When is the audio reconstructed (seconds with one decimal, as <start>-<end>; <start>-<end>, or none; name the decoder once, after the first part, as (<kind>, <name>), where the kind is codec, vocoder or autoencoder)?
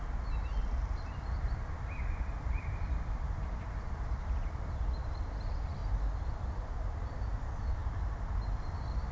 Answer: 0.6-4.4 (vocoder, BigVGAN v2)